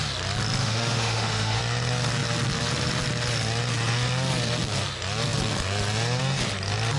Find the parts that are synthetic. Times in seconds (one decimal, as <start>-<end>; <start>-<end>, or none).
0.6-1.6

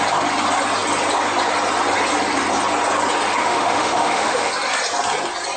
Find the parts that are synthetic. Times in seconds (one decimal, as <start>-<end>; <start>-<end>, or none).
3.4-4.5

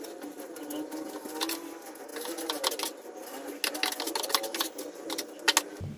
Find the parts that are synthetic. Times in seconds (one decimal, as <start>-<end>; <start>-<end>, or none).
none